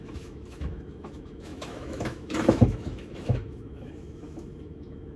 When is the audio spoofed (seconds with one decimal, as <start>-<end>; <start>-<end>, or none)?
0.0-5.2